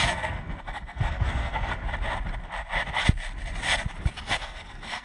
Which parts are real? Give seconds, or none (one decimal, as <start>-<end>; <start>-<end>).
1.7-4.2